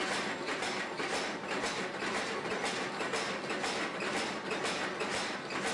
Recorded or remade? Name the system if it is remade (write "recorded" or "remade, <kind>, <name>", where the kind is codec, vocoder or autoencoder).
recorded